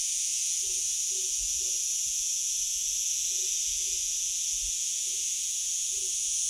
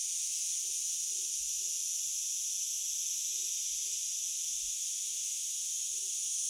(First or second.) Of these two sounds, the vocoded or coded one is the first